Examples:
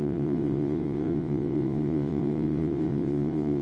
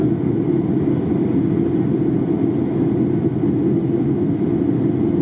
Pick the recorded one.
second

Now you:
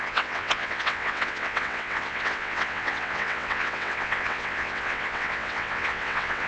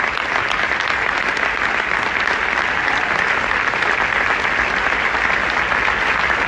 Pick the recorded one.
second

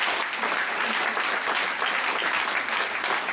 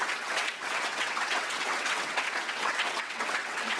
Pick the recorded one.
first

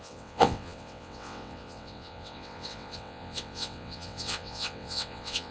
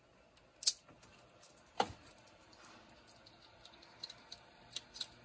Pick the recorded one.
second